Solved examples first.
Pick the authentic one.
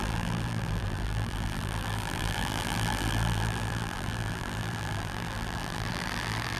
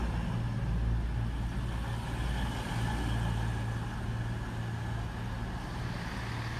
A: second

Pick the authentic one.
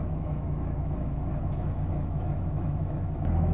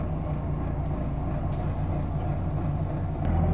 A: second